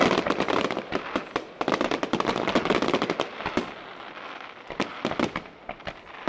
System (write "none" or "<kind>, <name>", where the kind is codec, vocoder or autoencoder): none